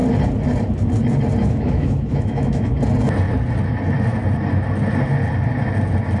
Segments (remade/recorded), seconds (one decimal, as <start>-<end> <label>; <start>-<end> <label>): 0.0-1.4 recorded; 1.4-2.7 remade; 2.7-6.2 recorded